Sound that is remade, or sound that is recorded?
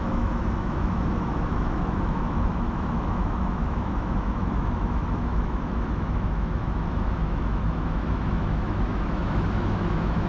remade